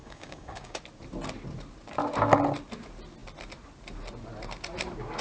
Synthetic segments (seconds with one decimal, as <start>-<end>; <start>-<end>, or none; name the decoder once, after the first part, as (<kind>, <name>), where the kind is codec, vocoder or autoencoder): 0.0-0.8 (codec, DAC)